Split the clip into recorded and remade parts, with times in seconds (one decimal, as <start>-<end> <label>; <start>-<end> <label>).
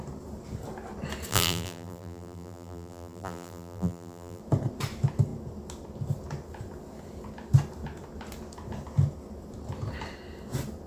0.0-1.3 recorded; 1.3-4.4 remade; 4.4-10.9 recorded